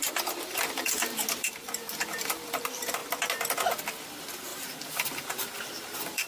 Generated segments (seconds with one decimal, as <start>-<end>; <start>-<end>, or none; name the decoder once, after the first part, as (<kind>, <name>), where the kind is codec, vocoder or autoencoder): 0.0-3.0 (vocoder, BigVGAN v2); 3.9-6.3